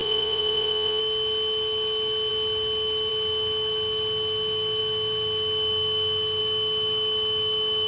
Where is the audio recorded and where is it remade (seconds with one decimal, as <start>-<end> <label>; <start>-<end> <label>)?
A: 0.0-1.0 remade; 1.0-7.9 recorded